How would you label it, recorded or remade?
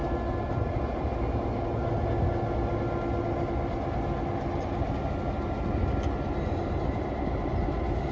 recorded